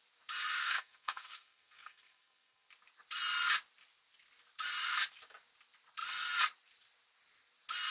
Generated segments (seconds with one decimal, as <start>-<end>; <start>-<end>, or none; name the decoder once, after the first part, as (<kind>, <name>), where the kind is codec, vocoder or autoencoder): 0.6-2.7 (codec, SNAC)